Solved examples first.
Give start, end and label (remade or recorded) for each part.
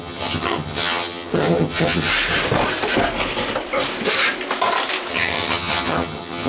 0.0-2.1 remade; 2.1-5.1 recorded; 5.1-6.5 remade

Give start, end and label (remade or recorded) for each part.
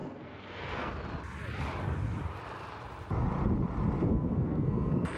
0.0-0.9 remade; 0.9-4.1 recorded; 4.1-5.2 remade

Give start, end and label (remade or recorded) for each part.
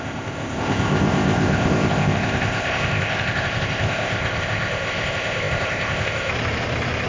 0.0-6.3 remade; 6.3-7.1 recorded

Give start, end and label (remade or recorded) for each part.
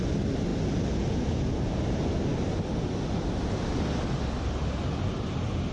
0.0-5.7 recorded